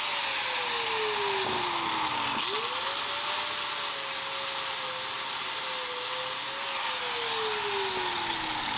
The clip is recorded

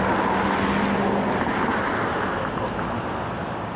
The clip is recorded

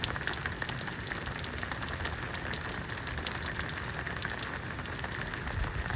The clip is recorded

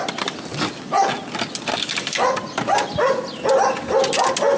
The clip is recorded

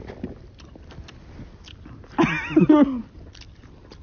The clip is recorded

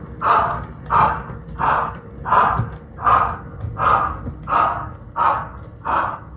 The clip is recorded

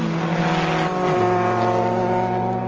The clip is recorded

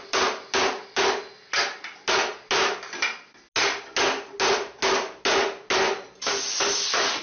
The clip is recorded